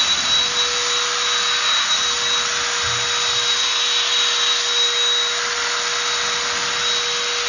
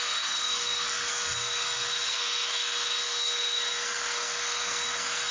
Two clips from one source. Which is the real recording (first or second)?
first